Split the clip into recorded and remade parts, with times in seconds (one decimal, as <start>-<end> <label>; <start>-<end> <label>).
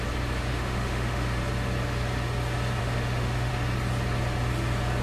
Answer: 0.0-0.5 recorded; 0.5-1.4 remade; 1.4-2.8 recorded; 2.8-3.5 remade; 3.5-5.0 recorded